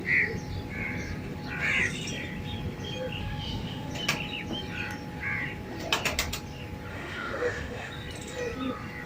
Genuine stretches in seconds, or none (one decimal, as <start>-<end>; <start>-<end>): 0.0-3.2; 3.9-6.9; 7.9-9.1